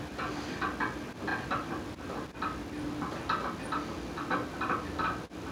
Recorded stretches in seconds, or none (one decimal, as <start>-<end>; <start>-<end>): 0.0-5.5